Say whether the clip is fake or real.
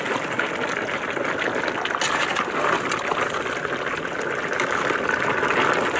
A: real